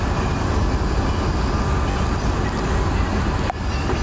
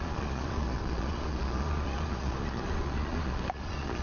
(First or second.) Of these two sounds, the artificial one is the second